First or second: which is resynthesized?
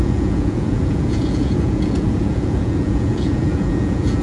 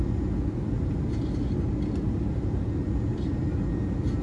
first